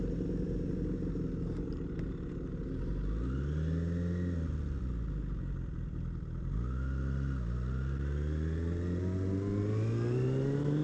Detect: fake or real real